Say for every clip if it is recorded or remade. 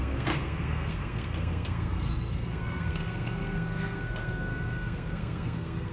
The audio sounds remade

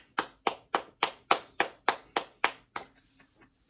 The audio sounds recorded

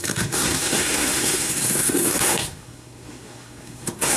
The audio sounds remade